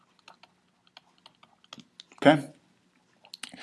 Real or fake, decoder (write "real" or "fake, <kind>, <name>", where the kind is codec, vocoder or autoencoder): real